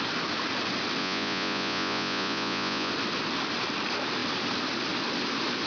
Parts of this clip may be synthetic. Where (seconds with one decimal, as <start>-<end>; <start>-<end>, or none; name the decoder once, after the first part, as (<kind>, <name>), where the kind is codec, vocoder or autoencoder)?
1.0-2.9 (vocoder, Vocos)